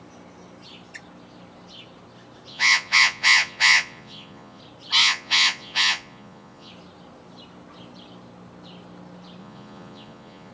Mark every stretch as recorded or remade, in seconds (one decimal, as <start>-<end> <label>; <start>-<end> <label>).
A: 0.0-2.5 recorded; 2.5-4.6 remade; 4.6-5.0 recorded; 5.0-6.7 remade; 6.7-9.4 recorded; 9.4-10.5 remade